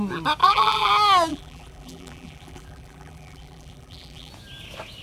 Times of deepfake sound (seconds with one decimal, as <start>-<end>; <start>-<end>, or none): 0.4-0.9; 1.3-4.3